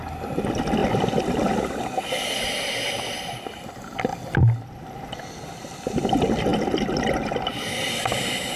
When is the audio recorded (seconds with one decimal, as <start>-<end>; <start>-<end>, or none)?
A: 0.0-4.1; 6.1-8.6